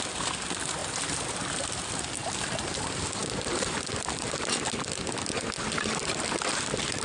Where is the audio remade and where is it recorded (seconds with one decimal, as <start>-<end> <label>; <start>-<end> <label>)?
0.0-7.0 recorded